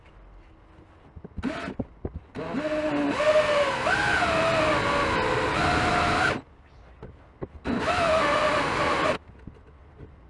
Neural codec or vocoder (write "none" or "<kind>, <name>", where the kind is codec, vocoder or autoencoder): none